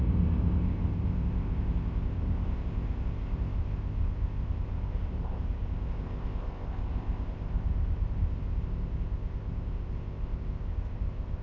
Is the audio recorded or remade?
remade